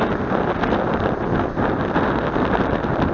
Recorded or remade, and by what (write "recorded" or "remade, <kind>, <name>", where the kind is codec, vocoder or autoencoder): recorded